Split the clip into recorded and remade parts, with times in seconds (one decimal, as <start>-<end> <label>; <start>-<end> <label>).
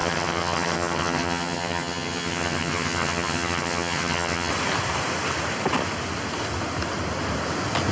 0.0-4.5 remade; 4.5-7.9 recorded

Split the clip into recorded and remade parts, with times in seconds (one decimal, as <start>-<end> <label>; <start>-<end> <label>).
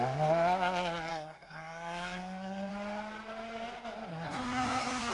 0.0-1.1 recorded; 1.1-2.7 remade; 2.7-4.1 recorded; 4.1-5.1 remade